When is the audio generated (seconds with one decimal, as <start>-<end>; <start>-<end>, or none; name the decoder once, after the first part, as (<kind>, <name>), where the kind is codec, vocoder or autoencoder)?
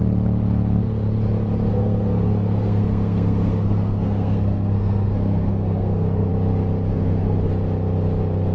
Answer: 1.7-6.3 (codec, SNAC); 6.9-7.5